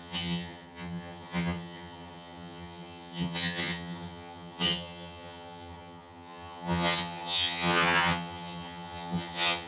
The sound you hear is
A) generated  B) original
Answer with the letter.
A